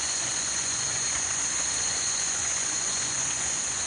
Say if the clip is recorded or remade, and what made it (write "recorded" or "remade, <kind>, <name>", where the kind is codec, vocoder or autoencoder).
remade, vocoder, Vocos